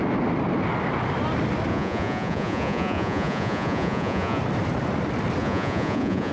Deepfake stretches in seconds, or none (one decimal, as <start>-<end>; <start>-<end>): 1.7-4.4; 5.4-6.3